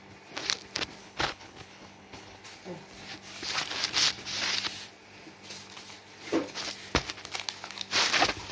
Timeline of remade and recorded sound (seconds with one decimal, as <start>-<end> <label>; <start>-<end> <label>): 0.0-1.0 recorded; 1.0-2.4 remade; 2.4-8.5 recorded